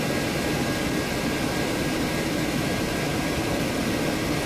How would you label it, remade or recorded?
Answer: recorded